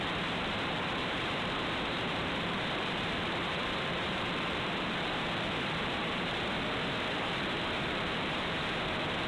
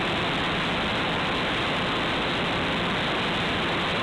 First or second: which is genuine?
second